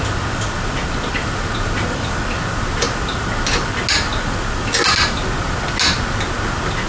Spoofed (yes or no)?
no